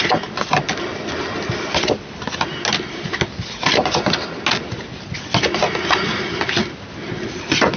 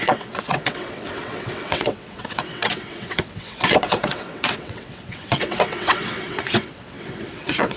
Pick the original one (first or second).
first